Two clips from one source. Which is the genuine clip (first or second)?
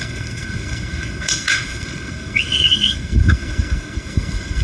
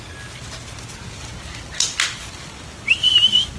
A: second